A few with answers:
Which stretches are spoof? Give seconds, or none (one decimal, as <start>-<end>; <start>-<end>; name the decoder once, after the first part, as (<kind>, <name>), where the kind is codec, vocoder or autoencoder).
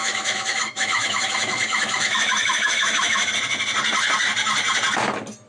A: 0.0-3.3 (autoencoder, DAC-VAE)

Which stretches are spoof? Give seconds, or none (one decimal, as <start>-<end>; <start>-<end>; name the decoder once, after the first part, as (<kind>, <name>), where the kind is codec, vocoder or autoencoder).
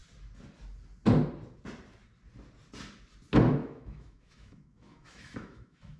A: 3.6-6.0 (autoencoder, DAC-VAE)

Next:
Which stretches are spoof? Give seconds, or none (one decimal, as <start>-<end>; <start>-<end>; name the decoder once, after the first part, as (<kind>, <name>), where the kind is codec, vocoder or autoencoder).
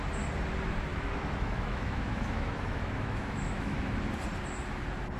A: 0.9-4.0 (autoencoder, DAC-VAE)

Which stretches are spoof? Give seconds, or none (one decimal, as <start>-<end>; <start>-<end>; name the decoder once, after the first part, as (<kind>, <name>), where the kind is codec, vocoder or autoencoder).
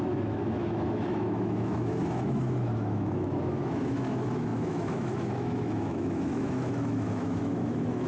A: 0.0-8.1 (autoencoder, DAC-VAE)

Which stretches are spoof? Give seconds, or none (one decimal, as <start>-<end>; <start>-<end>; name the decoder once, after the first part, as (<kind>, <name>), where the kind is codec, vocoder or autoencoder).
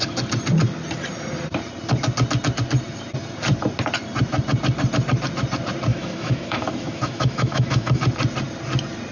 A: 5.9-8.0 (autoencoder, DAC-VAE)